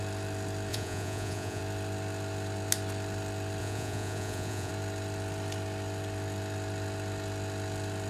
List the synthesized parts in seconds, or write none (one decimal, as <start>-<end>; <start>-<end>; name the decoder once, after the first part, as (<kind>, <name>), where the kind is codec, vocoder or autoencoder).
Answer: 0.7-1.6 (vocoder, Vocos); 3.6-4.7

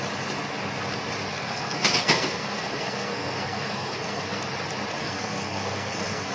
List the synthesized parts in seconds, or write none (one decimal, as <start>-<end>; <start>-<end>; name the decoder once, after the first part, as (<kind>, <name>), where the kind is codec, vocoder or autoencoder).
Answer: 1.3-4.4 (codec, SNAC); 5.0-6.3

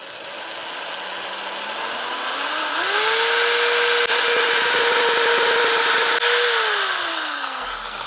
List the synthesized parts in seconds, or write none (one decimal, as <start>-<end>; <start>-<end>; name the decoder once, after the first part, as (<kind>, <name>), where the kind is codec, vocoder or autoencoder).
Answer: 7.1-8.1 (codec, SNAC)

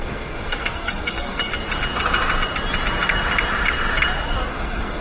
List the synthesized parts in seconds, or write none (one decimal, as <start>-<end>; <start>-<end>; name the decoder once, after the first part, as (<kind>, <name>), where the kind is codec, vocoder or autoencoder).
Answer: 0.0-1.5 (codec, SNAC); 4.5-5.0